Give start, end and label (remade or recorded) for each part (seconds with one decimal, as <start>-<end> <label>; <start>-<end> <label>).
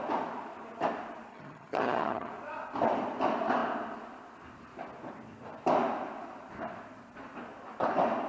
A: 0.0-1.3 recorded; 1.3-2.3 remade; 2.3-8.3 recorded